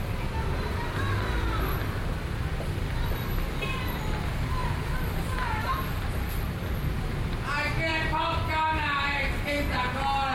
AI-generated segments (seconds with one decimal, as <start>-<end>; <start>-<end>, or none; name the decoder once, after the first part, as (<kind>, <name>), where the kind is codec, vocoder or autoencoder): 4.6-5.7 (vocoder, BigVGAN v2)

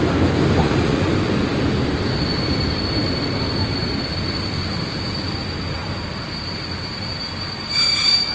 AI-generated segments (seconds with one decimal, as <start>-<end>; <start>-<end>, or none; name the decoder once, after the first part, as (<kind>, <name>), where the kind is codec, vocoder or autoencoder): 0.6-1.1 (vocoder, Vocos)

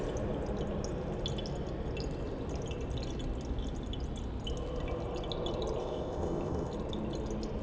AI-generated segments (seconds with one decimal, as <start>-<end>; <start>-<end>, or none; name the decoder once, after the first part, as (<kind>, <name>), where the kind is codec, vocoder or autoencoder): 5.8-6.7 (codec, ZipCodec)

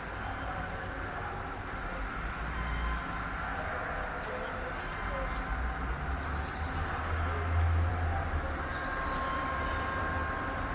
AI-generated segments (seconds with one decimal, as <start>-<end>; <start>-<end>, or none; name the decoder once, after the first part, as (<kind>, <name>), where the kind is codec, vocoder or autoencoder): none

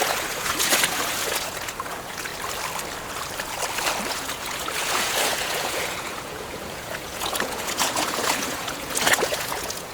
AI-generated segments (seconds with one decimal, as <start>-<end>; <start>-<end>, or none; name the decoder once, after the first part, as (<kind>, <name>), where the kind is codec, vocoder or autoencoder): 0.0-2.3 (vocoder, Vocos); 4.1-9.9

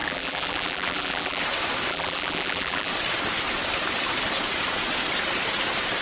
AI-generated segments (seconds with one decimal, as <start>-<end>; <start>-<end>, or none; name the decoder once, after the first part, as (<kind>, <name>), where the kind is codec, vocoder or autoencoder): 0.0-1.4 (vocoder, BigVGAN v2); 1.9-2.9

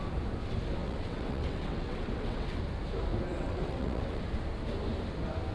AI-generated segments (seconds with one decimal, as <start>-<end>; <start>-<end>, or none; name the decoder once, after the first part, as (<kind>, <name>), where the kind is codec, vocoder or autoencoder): 0.8-2.6 (vocoder, WaveNeXt); 3.3-4.2

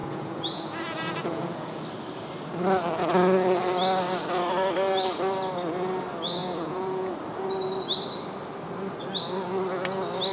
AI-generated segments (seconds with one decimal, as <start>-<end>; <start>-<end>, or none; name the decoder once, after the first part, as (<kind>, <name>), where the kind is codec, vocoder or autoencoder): 0.0-1.8 (vocoder, Vocos); 6.4-7.1